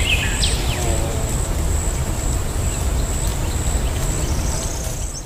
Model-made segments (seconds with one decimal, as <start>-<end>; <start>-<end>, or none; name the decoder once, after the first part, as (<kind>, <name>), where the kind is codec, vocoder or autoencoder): none